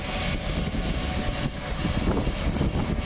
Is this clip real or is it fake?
real